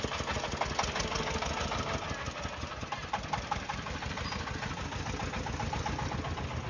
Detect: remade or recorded recorded